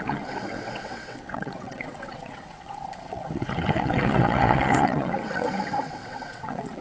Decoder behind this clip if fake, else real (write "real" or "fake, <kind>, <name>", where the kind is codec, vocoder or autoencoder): fake, vocoder, WaveNeXt